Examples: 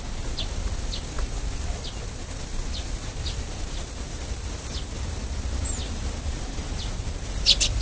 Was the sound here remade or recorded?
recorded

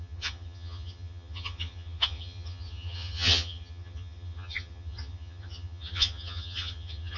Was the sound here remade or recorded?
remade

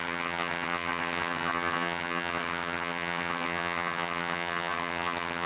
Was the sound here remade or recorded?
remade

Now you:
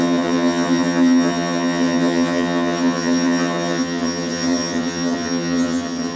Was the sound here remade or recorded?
remade